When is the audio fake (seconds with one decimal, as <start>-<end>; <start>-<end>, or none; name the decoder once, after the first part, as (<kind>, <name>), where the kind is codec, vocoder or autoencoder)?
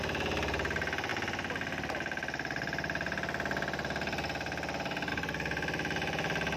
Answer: none